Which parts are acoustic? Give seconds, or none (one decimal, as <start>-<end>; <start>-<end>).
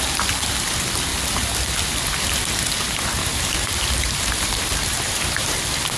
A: 0.0-3.2; 5.6-6.0